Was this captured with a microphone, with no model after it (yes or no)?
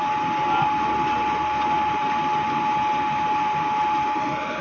yes